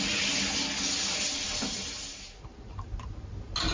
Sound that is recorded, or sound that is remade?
recorded